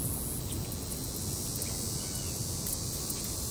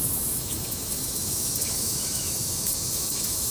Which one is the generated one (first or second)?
second